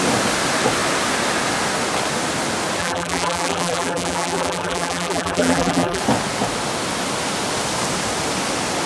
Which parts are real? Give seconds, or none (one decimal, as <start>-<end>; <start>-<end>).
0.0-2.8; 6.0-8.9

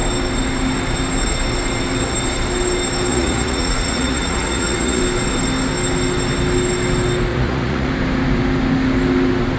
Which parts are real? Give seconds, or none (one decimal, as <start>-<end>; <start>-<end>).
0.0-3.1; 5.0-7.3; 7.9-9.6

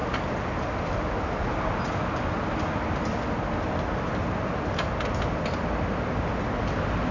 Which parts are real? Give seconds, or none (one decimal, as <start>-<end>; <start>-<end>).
0.0-7.1

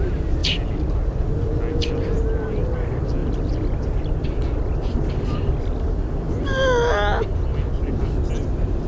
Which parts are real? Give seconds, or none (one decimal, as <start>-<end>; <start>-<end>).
0.0-8.9

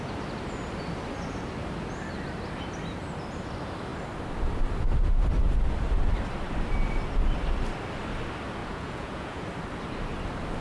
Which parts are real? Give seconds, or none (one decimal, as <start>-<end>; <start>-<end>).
0.0-8.6; 9.4-10.6

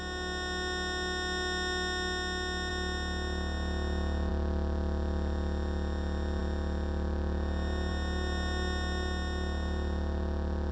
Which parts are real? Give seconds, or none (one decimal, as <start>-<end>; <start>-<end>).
0.0-10.7

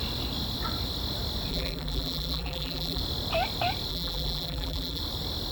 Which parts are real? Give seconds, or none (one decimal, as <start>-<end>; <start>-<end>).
0.0-1.5; 3.0-3.9; 5.0-5.5